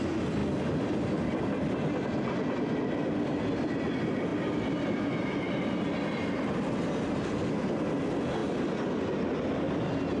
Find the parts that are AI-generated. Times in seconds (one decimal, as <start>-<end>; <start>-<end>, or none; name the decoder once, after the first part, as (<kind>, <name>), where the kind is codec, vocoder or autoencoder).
none